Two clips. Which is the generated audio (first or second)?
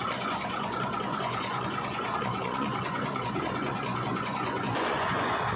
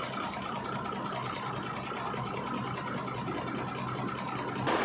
first